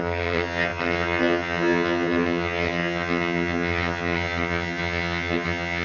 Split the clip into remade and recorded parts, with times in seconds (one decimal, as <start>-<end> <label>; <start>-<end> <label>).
0.0-5.8 remade